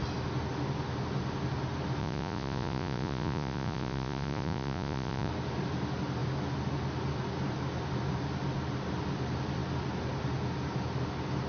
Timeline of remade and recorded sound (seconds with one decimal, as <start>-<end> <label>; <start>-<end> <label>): 0.0-2.0 recorded; 2.0-5.3 remade; 5.3-11.5 recorded